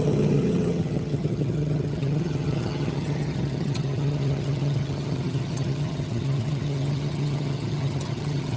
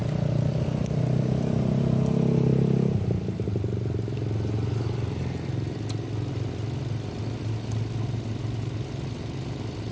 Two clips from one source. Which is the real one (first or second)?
second